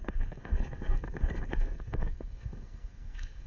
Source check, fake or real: fake